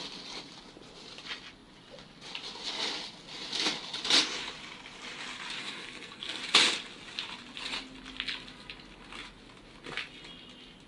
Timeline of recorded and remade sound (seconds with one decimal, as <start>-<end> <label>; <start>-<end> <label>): 0.0-5.6 recorded; 5.6-6.4 remade; 6.4-10.9 recorded